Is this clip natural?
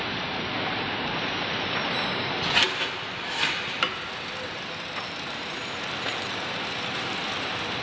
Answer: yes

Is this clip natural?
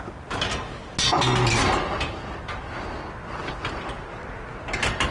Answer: yes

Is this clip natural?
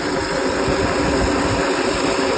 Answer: yes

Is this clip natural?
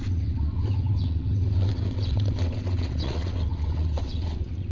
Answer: no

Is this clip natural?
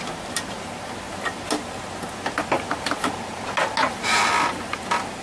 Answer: yes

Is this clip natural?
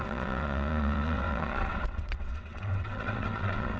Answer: no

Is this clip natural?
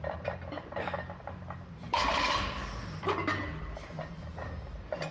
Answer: yes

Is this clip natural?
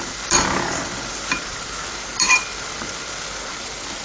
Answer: yes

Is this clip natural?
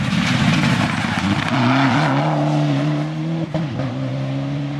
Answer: no